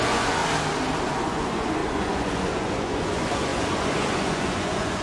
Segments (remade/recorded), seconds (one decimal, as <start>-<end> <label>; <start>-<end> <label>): 0.0-0.4 remade; 0.4-1.1 recorded; 1.1-5.0 remade